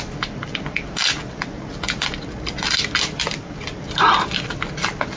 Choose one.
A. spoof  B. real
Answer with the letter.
B